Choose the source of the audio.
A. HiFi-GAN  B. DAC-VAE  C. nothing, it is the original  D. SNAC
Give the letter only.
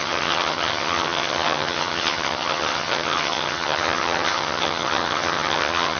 A